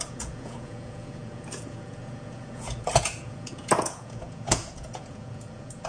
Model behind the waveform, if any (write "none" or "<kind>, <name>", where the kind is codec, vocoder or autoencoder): vocoder, Vocos